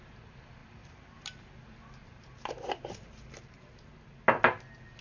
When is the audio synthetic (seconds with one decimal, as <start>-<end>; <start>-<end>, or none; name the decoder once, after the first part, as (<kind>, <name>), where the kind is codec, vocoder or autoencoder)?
0.6-1.5 (vocoder, BigVGAN v2); 2.0-3.9